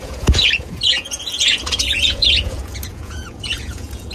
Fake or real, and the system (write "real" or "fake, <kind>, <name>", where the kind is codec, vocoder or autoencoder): fake, vocoder, Vocos